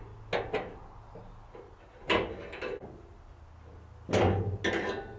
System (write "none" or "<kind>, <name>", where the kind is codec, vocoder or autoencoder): none